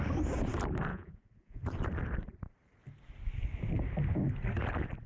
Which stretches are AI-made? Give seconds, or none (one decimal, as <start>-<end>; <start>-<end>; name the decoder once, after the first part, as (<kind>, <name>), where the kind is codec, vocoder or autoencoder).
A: 0.9-1.6 (vocoder, Vocos)